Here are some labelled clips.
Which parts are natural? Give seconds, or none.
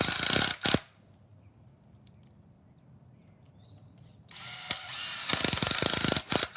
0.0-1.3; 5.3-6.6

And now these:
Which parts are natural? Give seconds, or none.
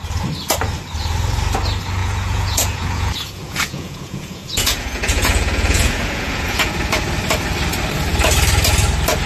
0.0-2.0; 6.7-9.3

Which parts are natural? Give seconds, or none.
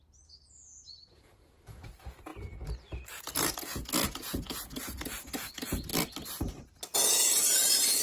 2.3-3.2; 5.9-6.5